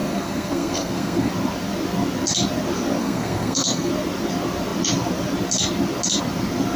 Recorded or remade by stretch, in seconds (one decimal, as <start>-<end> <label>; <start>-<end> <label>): 0.0-1.3 remade; 1.3-3.0 recorded; 3.0-3.9 remade; 3.9-6.8 recorded